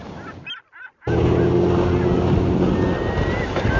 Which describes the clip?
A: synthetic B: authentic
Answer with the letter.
B